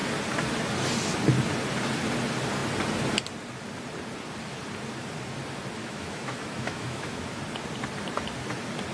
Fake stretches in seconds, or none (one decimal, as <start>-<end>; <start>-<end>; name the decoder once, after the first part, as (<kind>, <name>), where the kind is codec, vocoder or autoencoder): 5.8-7.2 (autoencoder, DAC-VAE)